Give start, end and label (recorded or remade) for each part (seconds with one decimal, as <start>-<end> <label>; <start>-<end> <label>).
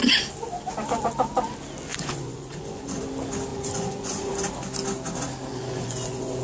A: 0.0-1.9 recorded; 1.9-3.0 remade; 3.0-3.5 recorded; 3.5-4.3 remade; 4.3-5.5 recorded; 5.5-6.4 remade